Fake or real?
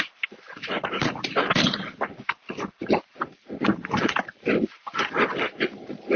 fake